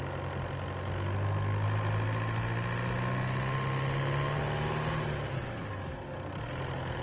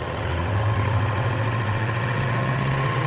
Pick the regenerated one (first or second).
second